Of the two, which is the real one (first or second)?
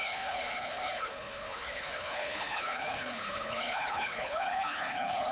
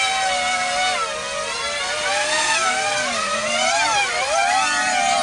second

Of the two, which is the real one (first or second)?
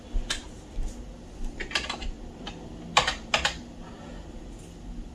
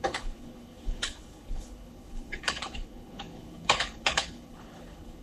first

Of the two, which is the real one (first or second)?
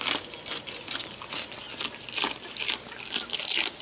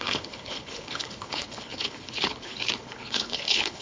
first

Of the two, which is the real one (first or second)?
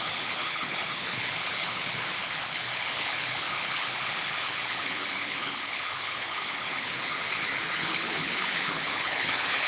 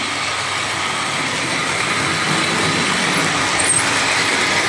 second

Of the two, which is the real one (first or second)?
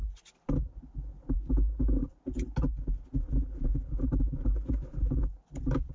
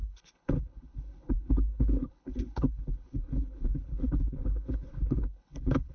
first